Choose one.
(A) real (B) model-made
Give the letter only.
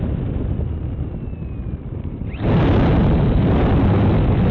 A